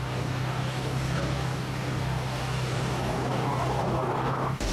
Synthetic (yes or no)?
yes